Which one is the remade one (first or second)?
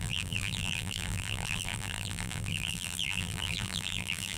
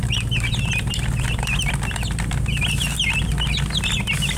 first